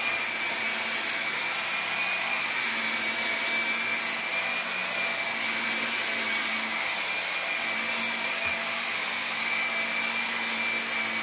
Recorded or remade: recorded